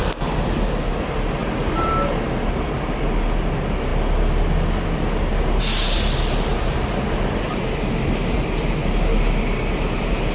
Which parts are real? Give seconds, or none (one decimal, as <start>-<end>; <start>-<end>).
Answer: 0.0-1.4; 1.9-10.3